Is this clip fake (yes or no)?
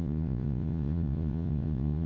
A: yes